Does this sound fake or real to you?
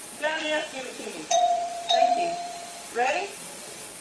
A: fake